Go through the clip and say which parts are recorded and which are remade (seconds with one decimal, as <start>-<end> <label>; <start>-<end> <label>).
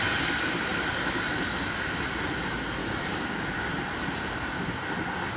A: 0.0-2.8 recorded; 2.8-3.4 remade; 3.4-5.4 recorded